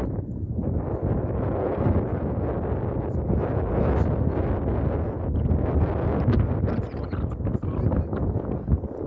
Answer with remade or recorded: recorded